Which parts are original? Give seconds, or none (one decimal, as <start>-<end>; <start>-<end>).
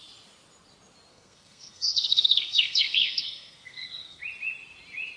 0.0-1.1; 4.2-5.2